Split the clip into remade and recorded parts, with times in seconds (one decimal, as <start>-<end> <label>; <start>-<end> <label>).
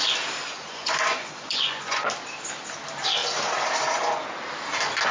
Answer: 0.0-0.4 recorded; 0.4-2.1 remade; 2.1-5.1 recorded